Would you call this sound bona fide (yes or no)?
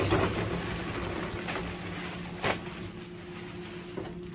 yes